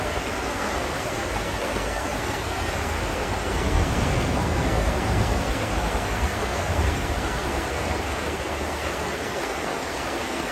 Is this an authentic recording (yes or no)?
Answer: no